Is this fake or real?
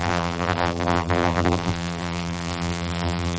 fake